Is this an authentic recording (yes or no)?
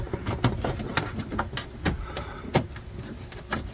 yes